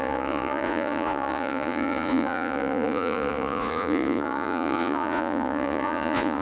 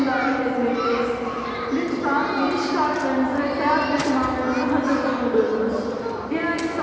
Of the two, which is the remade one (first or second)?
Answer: first